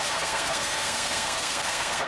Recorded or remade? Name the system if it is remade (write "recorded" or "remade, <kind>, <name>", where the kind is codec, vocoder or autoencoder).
remade, codec, SNAC